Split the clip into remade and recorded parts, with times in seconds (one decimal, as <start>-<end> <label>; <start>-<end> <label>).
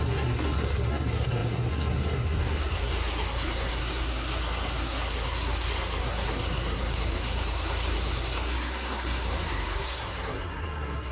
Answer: 0.0-11.1 remade